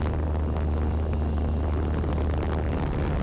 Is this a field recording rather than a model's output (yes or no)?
yes